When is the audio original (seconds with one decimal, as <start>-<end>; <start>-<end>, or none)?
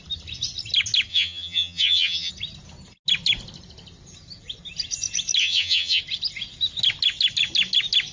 0.0-1.1; 2.3-5.4; 6.0-8.1